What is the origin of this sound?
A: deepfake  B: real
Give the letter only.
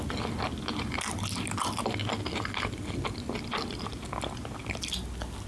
B